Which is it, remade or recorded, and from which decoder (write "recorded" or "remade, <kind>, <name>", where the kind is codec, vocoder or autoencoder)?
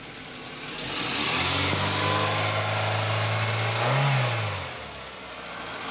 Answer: recorded